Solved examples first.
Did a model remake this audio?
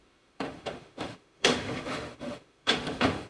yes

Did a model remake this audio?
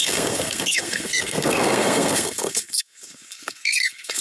yes